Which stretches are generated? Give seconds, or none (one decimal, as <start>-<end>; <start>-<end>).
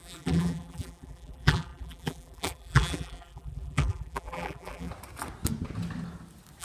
0.0-4.9